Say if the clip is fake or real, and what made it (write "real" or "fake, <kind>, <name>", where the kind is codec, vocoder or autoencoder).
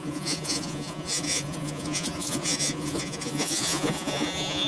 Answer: fake, vocoder, Vocos